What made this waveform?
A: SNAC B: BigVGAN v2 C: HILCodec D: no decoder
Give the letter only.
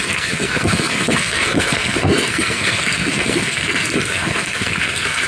A